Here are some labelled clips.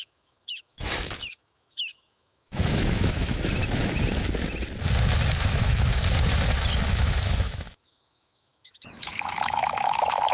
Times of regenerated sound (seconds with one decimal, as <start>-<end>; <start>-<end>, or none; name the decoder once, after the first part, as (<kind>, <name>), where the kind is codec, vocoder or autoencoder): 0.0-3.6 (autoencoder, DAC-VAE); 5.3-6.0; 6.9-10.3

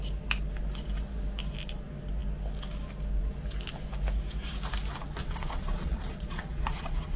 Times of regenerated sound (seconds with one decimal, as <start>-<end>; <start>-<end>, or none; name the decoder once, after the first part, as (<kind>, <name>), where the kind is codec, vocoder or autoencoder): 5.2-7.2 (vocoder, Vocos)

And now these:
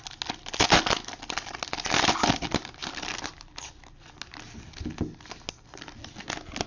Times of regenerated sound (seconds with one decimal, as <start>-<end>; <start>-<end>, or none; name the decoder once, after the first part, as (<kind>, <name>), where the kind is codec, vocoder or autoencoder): none

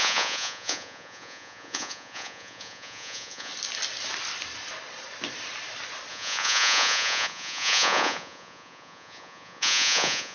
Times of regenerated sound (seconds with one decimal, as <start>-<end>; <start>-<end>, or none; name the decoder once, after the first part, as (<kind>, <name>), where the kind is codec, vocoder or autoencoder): 0.0-3.5 (vocoder, Vocos); 6.1-10.3

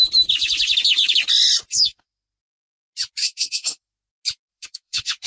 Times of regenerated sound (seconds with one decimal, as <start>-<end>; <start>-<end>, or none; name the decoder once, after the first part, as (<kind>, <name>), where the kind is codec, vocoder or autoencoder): 1.7-2.4 (autoencoder, DAC-VAE); 3.2-4.1; 4.5-5.3

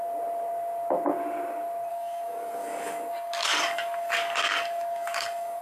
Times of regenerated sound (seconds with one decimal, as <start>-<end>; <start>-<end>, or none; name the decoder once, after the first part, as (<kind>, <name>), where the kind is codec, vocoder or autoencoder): 1.9-5.6 (codec, DAC)

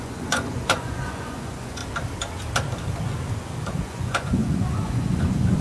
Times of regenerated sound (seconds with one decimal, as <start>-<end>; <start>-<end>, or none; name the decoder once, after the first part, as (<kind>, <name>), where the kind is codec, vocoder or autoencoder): 0.0-1.8 (vocoder, Vocos); 3.7-5.6

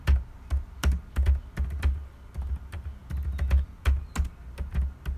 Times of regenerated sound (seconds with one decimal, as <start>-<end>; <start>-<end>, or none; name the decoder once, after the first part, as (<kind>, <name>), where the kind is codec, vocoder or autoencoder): none